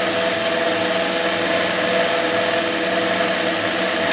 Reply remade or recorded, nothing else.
recorded